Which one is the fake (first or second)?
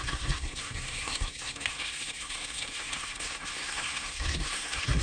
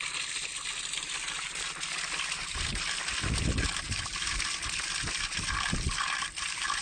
first